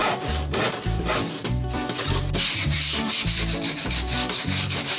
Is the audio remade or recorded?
remade